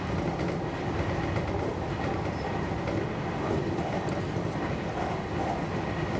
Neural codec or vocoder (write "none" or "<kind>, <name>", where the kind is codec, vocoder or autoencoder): none